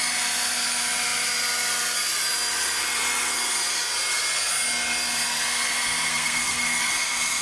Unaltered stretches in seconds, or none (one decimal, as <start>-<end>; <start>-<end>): 0.0-6.1; 6.9-7.4